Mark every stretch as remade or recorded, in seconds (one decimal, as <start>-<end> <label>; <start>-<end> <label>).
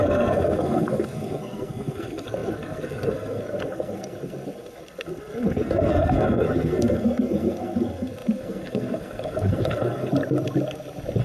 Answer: 0.0-10.1 remade; 10.1-11.2 recorded